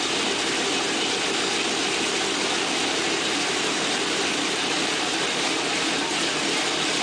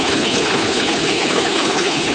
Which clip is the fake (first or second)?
second